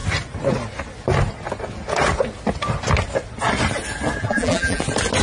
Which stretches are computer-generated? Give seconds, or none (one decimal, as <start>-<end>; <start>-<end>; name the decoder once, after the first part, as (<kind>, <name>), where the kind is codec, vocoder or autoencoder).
4.2-4.8 (vocoder, BigVGAN v2)

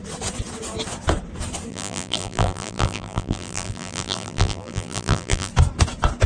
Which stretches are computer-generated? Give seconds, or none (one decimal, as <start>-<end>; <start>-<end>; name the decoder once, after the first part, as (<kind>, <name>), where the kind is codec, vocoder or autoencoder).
1.7-5.5 (vocoder, BigVGAN v2)

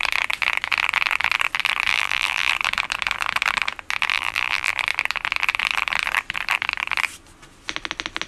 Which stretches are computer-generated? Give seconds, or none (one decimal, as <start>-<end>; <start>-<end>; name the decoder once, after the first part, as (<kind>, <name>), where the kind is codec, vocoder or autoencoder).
1.9-2.5 (vocoder, BigVGAN v2); 4.1-4.7

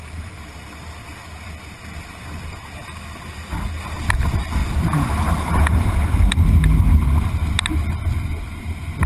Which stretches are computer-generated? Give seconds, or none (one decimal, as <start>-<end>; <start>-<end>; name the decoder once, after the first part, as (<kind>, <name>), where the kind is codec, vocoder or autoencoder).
none

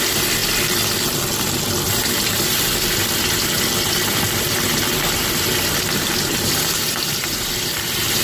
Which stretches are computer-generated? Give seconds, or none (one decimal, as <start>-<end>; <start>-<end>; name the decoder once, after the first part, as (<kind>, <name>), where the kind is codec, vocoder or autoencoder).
0.0-0.4 (vocoder, BigVGAN v2); 3.9-8.2

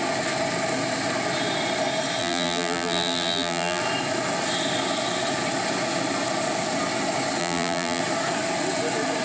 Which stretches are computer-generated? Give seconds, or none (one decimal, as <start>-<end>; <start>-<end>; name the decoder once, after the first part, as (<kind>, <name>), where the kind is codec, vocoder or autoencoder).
2.2-3.8 (vocoder, BigVGAN v2); 7.4-8.0